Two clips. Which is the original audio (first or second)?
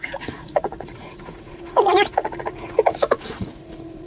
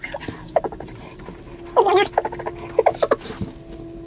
second